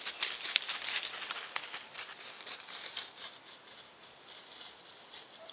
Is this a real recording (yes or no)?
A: yes